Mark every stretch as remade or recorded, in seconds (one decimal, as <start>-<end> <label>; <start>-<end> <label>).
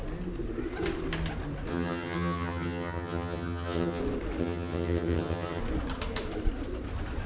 0.0-1.7 recorded; 1.7-4.0 remade; 4.0-4.4 recorded; 4.4-5.6 remade; 5.6-7.3 recorded